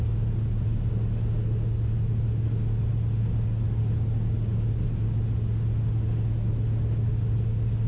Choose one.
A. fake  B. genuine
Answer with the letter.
B